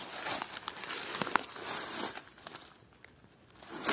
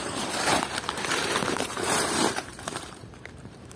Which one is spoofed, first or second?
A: second